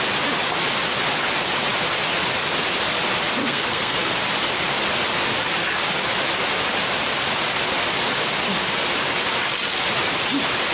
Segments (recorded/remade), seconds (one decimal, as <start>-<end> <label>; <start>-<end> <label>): 0.0-3.4 recorded; 3.4-4.1 remade; 4.1-10.7 recorded